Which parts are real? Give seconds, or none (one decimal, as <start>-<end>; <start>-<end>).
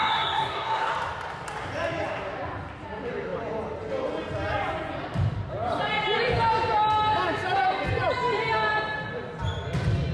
0.9-10.1